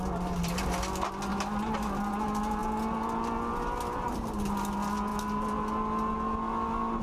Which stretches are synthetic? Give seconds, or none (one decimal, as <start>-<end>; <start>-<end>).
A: none